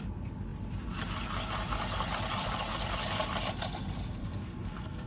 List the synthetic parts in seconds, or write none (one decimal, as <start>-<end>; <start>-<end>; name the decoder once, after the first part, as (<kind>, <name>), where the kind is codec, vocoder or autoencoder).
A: 4.2-5.1 (codec, SNAC)